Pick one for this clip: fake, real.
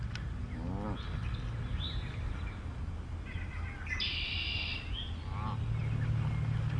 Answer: real